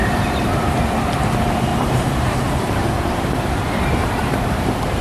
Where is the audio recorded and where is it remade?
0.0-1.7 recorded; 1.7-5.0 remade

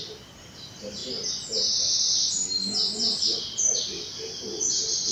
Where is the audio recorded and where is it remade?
0.0-5.1 recorded

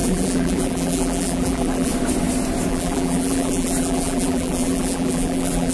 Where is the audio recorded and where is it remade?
0.0-1.9 remade; 1.9-2.7 recorded; 2.7-5.7 remade